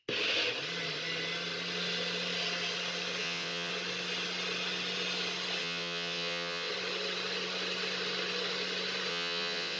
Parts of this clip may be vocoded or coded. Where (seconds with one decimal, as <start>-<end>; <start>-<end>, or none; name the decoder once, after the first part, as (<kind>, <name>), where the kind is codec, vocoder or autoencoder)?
3.2-3.7 (vocoder, WaveNeXt); 5.6-6.7; 9.1-9.8

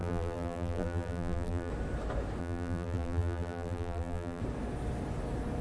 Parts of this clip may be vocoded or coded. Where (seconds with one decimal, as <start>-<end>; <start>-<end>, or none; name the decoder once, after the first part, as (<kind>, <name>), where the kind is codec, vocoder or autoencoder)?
0.0-1.7 (vocoder, BigVGAN v2); 2.4-4.4